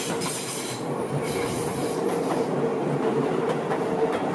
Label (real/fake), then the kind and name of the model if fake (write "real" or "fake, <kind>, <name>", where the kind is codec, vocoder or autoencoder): real